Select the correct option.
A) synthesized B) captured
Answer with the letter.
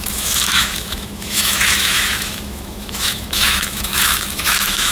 A